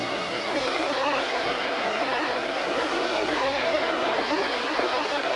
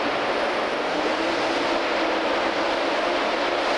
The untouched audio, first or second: second